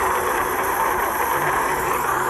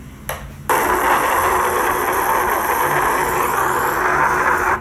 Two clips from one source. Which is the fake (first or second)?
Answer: first